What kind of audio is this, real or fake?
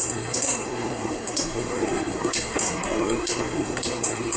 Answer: fake